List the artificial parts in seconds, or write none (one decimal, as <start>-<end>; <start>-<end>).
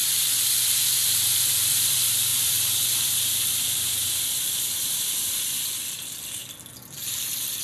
0.0-6.4